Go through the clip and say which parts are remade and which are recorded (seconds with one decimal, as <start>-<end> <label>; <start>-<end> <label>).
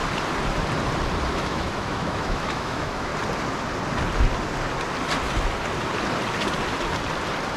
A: 0.0-1.3 recorded; 1.3-3.1 remade; 3.1-7.6 recorded